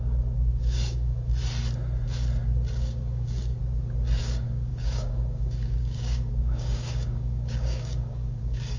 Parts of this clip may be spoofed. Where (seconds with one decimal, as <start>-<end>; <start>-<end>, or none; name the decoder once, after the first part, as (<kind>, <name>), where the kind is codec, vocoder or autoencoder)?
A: 0.0-1.3 (codec, DAC); 2.8-3.5; 4.2-8.8